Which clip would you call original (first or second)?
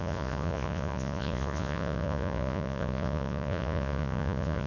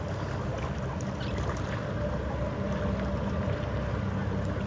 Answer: second